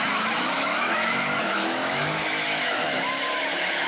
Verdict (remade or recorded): remade